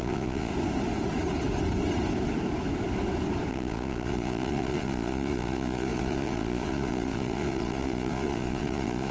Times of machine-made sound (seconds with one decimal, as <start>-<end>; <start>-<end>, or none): 0.0-0.5; 3.5-9.1